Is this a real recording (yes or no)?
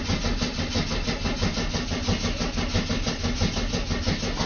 yes